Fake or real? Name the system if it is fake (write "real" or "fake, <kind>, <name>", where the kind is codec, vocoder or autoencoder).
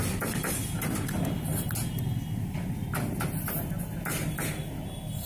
real